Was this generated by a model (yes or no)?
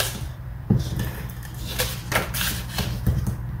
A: yes